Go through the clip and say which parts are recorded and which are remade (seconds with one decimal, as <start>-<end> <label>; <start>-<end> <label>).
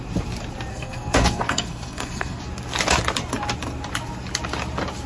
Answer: 0.0-0.7 recorded; 0.7-2.4 remade; 2.4-5.1 recorded